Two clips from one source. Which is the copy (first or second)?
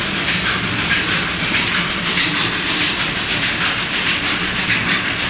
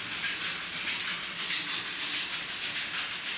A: first